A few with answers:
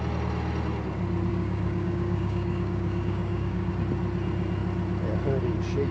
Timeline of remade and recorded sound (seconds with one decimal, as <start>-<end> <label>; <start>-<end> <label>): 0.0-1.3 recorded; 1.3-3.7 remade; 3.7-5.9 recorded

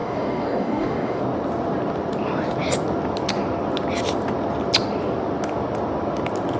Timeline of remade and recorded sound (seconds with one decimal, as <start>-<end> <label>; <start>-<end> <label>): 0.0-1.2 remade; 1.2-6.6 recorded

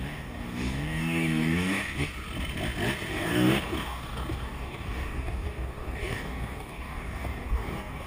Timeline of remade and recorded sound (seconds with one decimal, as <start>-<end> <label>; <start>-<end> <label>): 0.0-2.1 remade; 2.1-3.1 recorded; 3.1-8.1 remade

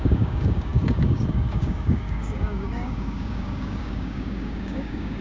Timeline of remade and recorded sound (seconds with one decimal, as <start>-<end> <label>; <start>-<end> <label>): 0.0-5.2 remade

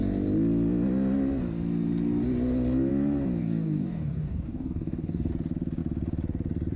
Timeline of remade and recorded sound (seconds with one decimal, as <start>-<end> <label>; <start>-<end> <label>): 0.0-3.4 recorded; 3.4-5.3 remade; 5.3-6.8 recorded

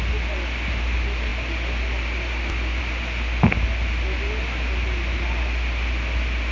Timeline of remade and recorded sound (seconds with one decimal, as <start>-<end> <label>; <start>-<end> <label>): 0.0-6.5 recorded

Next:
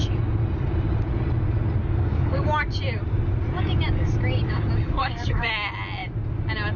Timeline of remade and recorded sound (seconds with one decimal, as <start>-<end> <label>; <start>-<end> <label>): 0.0-1.8 recorded; 1.8-2.4 remade; 2.4-5.0 recorded; 5.0-5.5 remade; 5.5-6.8 recorded

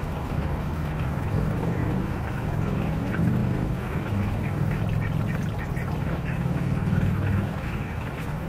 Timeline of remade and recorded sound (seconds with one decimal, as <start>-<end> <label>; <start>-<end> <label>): 0.0-4.8 remade; 4.8-6.0 recorded; 6.0-8.5 remade